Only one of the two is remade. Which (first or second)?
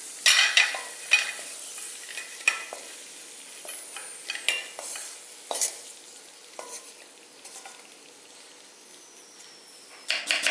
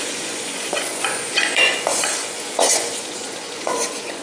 second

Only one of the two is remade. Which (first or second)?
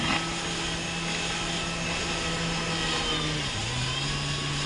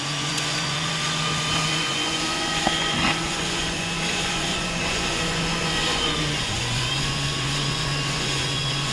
second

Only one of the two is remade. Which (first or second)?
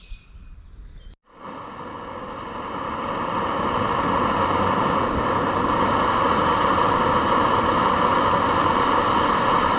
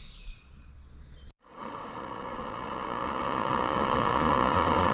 second